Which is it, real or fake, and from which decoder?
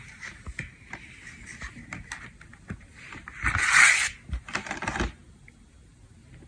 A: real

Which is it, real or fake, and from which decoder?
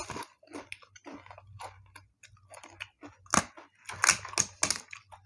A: real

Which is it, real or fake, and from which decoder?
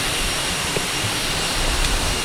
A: real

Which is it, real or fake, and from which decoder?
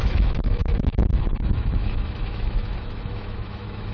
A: fake, autoencoder, DAC-VAE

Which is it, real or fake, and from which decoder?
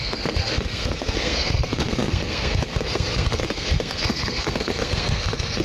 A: fake, codec, SNAC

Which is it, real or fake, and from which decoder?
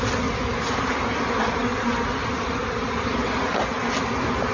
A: real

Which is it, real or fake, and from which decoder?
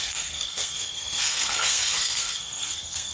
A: fake, codec, SNAC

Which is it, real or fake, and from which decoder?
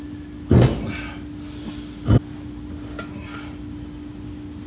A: real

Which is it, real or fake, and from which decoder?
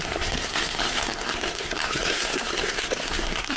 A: fake, codec, SNAC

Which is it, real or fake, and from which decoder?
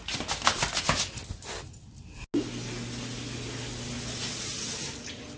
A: real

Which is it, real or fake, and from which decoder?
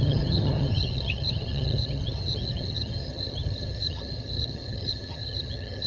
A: fake, vocoder, HiFi-GAN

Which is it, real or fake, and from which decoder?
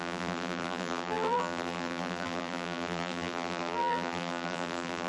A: fake, vocoder, BigVGAN v2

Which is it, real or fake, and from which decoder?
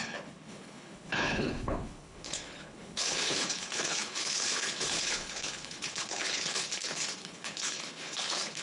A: fake, codec, HILCodec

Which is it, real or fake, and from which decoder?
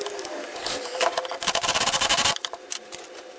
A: real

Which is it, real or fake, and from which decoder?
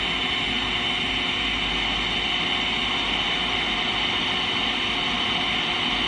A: real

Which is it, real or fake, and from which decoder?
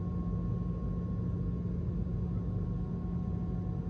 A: real